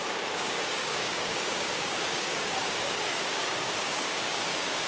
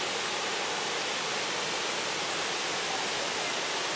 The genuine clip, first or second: second